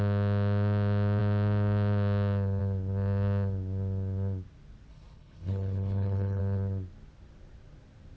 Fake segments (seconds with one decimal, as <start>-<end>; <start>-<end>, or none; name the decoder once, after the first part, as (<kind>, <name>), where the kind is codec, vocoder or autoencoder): 4.9-6.4 (codec, HILCodec)